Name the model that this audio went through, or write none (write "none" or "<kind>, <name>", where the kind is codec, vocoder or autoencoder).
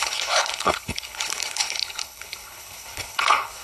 codec, HILCodec